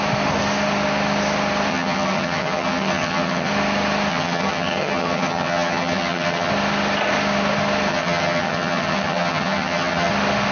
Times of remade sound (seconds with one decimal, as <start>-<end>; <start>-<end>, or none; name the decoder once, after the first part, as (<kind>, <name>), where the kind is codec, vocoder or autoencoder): 1.7-3.5 (vocoder, HiFi-GAN); 4.1-6.5; 7.9-10.1